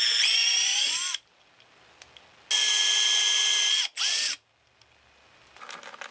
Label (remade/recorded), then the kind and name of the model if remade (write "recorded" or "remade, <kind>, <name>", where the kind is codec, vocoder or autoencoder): recorded